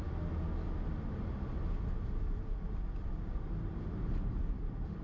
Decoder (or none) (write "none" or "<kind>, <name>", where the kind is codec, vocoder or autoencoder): none